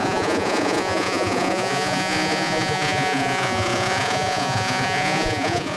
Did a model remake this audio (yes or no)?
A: yes